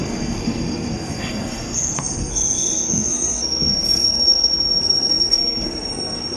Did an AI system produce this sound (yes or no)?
yes